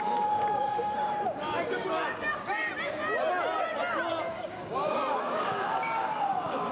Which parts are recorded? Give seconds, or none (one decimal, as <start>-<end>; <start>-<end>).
2.7-4.1